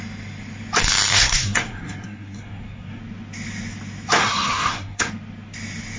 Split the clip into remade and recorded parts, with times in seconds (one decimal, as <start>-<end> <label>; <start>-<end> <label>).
0.0-1.1 recorded; 1.1-3.0 remade; 3.0-4.2 recorded; 4.2-5.1 remade; 5.1-6.0 recorded